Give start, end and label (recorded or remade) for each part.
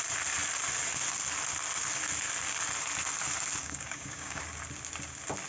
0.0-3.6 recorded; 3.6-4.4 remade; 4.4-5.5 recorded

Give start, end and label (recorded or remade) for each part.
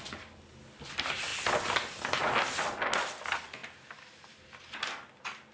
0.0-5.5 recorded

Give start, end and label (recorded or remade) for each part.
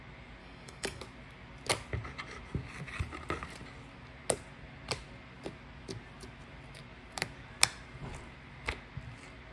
0.0-0.4 recorded; 0.4-1.0 remade; 1.0-9.5 recorded